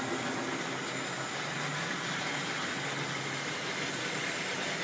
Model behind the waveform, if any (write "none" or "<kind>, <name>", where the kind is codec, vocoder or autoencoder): none